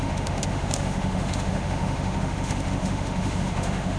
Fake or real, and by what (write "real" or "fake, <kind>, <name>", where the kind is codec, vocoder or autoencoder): fake, autoencoder, DAC-VAE